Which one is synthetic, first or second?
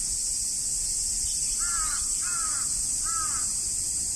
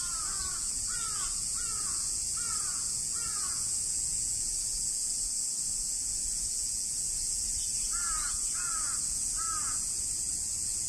second